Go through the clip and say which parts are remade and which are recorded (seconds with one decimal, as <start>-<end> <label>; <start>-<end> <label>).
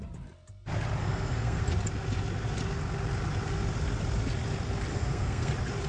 0.0-1.0 recorded; 1.0-1.6 remade; 1.6-4.9 recorded; 4.9-5.5 remade; 5.5-5.9 recorded